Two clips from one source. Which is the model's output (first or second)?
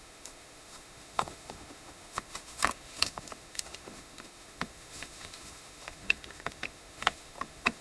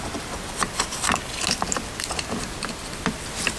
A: first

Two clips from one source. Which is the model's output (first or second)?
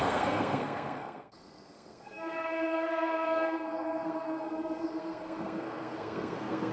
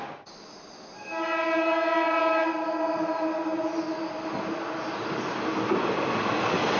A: first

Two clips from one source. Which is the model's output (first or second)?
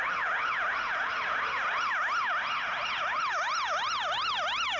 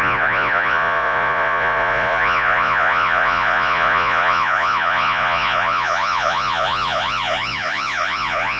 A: second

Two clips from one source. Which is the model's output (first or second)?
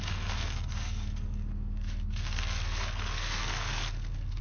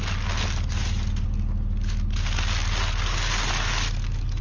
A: first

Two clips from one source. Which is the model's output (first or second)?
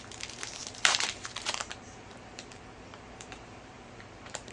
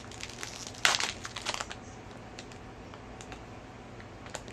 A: first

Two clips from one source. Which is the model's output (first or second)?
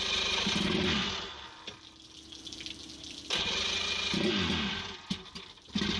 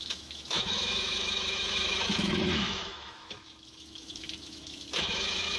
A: second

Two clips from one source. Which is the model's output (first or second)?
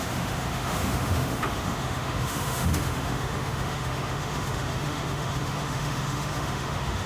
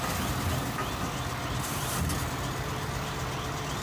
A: first